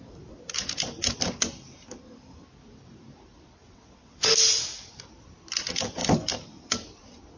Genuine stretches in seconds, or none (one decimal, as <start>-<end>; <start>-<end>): 0.0-3.6; 4.3-7.4